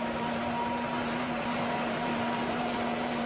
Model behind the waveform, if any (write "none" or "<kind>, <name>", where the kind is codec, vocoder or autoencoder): vocoder, BigVGAN v2